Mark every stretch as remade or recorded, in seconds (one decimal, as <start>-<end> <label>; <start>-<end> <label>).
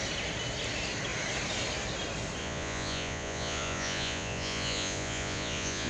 0.0-2.4 recorded; 2.4-5.9 remade